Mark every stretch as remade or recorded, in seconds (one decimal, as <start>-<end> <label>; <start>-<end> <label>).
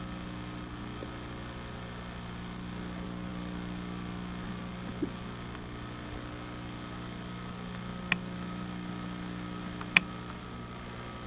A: 0.0-11.3 recorded